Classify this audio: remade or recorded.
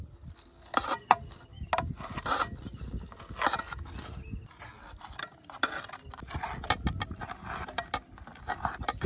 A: recorded